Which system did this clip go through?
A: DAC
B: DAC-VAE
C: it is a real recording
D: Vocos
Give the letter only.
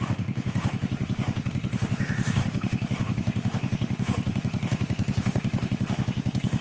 B